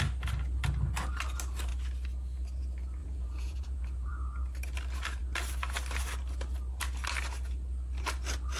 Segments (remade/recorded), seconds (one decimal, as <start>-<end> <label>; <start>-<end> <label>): 0.0-3.0 recorded; 3.0-4.1 remade; 4.1-8.6 recorded